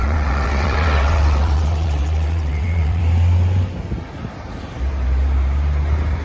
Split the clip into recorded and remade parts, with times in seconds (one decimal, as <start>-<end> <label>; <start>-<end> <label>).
0.0-3.0 remade; 3.0-6.2 recorded